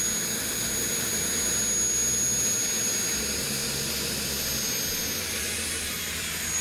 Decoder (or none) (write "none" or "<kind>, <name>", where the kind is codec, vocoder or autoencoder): none